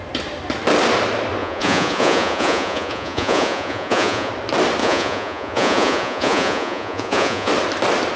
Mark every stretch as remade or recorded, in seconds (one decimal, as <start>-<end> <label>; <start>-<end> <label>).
0.0-1.4 recorded; 1.4-4.3 remade; 4.3-4.8 recorded; 4.8-7.5 remade; 7.5-8.2 recorded